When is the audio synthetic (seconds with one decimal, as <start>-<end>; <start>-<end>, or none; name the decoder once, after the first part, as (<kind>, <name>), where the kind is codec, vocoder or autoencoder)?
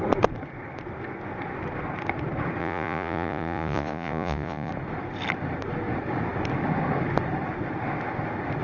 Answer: 2.6-4.7 (vocoder, Vocos)